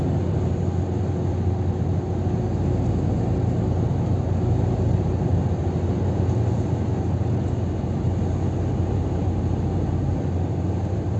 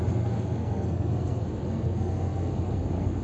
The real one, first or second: first